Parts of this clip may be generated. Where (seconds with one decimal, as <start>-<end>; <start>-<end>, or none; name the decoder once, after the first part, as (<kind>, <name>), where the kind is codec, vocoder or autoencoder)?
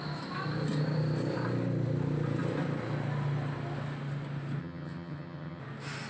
4.6-5.6 (vocoder, HiFi-GAN)